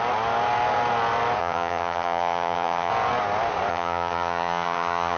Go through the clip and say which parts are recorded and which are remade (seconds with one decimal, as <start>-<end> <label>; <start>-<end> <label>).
0.0-1.4 recorded; 1.4-2.9 remade; 2.9-3.7 recorded; 3.7-5.2 remade